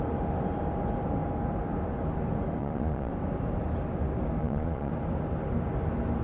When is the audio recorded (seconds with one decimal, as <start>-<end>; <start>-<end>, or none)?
0.0-2.6; 3.1-4.4; 4.9-6.2